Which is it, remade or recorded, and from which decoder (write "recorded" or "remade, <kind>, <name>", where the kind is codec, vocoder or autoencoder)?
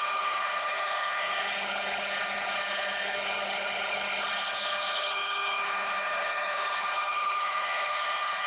remade, codec, HILCodec